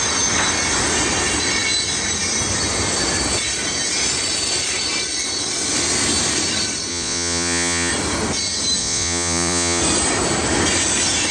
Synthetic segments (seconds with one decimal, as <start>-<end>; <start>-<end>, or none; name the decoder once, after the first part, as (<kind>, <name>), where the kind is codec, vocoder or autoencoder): 6.9-7.9 (vocoder, Vocos); 8.8-9.8